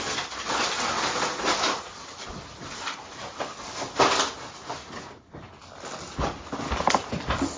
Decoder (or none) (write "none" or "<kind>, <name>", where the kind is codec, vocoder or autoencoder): none